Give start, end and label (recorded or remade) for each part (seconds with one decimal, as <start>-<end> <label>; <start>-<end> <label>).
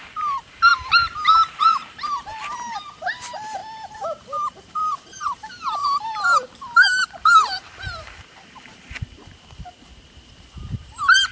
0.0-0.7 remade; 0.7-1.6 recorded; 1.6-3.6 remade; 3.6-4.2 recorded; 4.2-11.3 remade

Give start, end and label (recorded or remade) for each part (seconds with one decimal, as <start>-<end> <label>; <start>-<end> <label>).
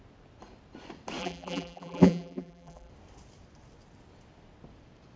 0.0-1.2 recorded; 1.2-2.9 remade; 2.9-5.2 recorded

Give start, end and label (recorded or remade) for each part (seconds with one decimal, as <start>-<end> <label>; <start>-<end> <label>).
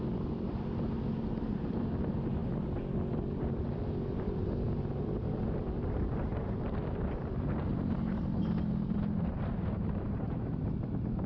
0.0-6.2 recorded; 6.2-7.3 remade; 7.3-7.7 recorded; 7.7-10.4 remade; 10.4-11.3 recorded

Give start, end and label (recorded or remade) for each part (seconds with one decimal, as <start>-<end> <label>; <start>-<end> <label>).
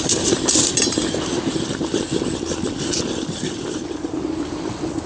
0.0-1.0 remade; 1.0-4.1 recorded; 4.1-5.1 remade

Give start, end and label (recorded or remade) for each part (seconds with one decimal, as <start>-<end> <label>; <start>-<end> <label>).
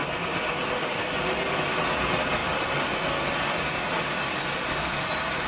0.0-5.5 recorded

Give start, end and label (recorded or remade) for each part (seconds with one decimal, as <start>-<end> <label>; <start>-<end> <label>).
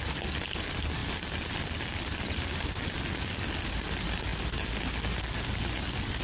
0.0-6.2 recorded